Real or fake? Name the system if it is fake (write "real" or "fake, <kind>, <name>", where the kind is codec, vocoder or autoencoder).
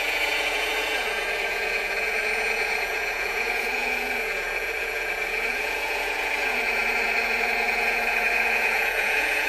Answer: fake, vocoder, Vocos